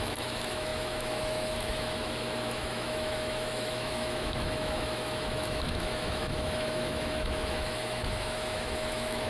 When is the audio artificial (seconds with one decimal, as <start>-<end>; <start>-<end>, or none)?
0.0-9.3